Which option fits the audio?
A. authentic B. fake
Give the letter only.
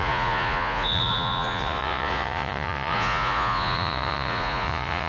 B